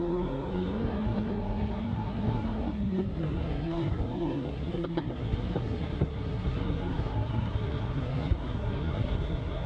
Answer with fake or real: fake